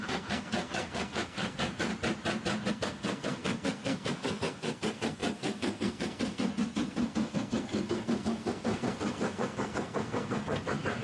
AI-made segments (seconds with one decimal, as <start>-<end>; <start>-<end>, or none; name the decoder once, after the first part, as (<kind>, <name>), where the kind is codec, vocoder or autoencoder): 0.0-1.9 (codec, SNAC); 2.7-11.0